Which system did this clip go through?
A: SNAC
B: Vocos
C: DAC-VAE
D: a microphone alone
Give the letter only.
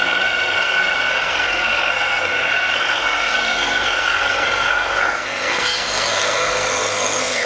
A